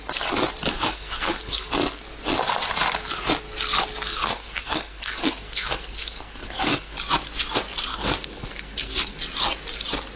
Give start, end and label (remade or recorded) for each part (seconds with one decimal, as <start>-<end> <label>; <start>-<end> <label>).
0.0-0.9 recorded; 0.9-1.7 remade; 1.7-4.1 recorded; 4.1-7.0 remade; 7.0-7.9 recorded; 7.9-9.2 remade; 9.2-10.2 recorded